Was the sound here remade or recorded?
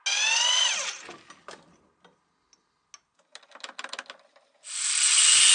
recorded